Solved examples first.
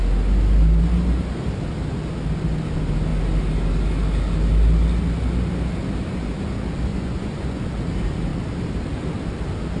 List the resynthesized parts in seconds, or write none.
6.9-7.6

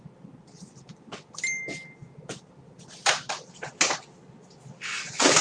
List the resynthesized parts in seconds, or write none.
none

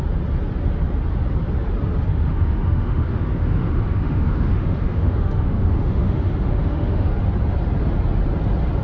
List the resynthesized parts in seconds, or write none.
2.1-7.1

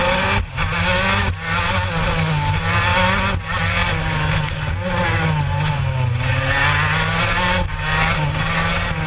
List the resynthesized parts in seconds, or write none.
none

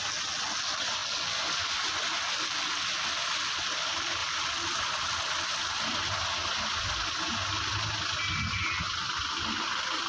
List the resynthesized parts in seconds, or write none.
none

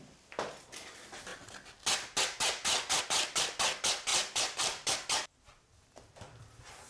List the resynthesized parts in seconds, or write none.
4.1-5.9

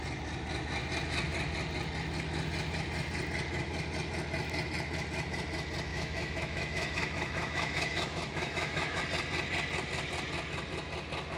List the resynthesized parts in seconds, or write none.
5.9-9.0